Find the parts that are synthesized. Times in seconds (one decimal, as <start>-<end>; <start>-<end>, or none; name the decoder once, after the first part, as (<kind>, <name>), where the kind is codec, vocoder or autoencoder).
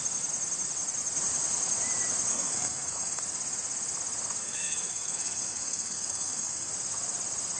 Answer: 2.3-3.2 (codec, SNAC); 4.4-6.7